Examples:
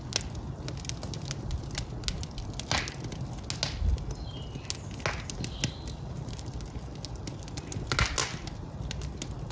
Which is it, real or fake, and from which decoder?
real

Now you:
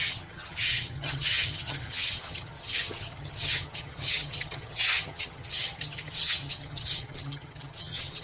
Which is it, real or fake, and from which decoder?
fake, vocoder, HiFi-GAN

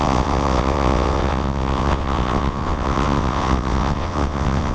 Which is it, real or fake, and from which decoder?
fake, vocoder, WaveNeXt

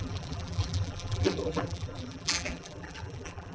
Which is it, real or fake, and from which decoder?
fake, vocoder, BigVGAN v2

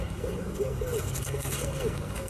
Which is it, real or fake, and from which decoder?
fake, codec, SNAC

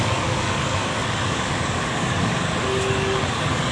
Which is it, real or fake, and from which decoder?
fake, codec, DAC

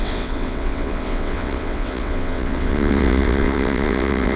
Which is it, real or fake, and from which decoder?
fake, vocoder, WaveNeXt